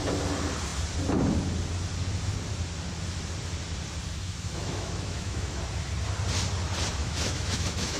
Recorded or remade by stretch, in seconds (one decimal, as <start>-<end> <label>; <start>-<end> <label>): 0.0-4.2 recorded; 4.2-5.6 remade; 5.6-7.0 recorded; 7.0-8.0 remade

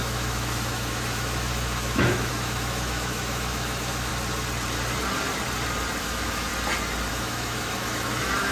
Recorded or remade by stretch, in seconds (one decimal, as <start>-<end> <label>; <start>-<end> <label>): 0.0-4.1 remade; 4.1-6.0 recorded; 6.0-6.5 remade; 6.5-7.1 recorded; 7.1-8.5 remade

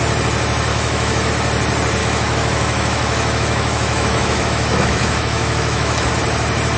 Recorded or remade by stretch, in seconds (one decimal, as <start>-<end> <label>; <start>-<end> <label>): 0.0-0.7 recorded; 0.7-1.3 remade; 1.3-2.0 recorded; 2.0-6.1 remade; 6.1-6.8 recorded

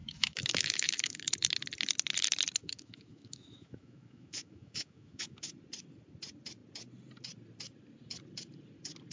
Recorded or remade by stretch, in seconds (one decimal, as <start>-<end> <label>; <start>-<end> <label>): 0.0-1.3 remade; 1.3-2.6 recorded; 2.6-5.5 remade; 5.5-9.1 recorded

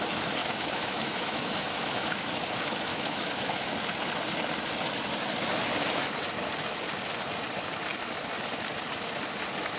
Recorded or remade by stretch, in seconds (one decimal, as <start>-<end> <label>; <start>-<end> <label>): 0.0-0.4 recorded; 0.4-2.4 remade; 2.4-2.9 recorded; 2.9-3.7 remade; 3.7-9.8 recorded

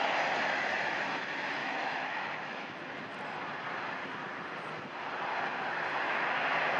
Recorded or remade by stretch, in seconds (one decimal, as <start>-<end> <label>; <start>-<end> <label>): 0.0-1.6 recorded; 1.6-2.8 remade; 2.8-6.8 recorded

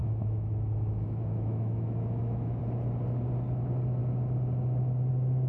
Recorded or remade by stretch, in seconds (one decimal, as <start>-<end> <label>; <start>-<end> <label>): 0.0-2.6 remade; 2.6-5.5 recorded